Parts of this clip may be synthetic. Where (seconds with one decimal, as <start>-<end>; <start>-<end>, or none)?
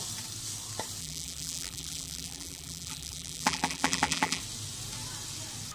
1.0-4.4